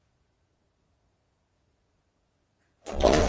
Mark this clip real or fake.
fake